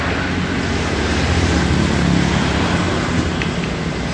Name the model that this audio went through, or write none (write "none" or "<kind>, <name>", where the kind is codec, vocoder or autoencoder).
none